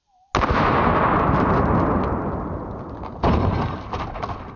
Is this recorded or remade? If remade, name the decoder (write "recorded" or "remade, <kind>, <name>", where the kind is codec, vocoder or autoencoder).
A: recorded